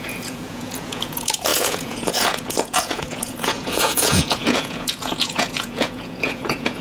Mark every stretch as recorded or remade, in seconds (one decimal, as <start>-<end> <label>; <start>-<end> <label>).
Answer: 0.0-6.8 remade